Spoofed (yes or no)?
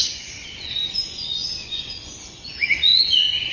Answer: yes